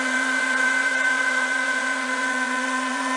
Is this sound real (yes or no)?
no